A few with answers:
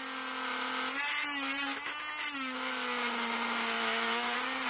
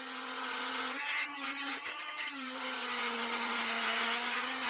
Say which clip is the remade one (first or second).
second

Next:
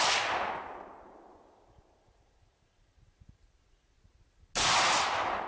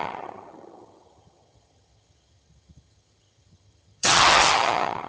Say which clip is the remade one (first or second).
second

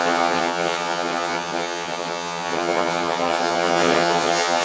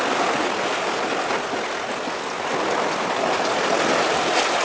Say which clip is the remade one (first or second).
first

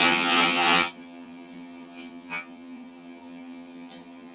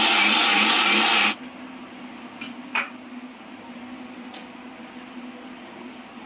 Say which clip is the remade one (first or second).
first